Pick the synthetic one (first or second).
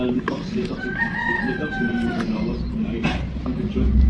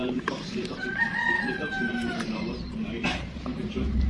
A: second